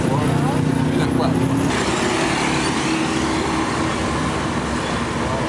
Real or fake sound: real